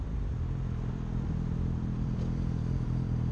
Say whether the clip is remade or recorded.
remade